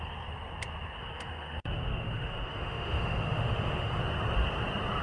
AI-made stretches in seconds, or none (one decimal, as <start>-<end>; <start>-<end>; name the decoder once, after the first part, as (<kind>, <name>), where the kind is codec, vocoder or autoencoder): 1.0-4.0 (autoencoder, DAC-VAE)